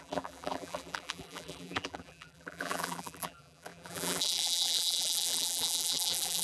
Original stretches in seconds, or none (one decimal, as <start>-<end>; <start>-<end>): none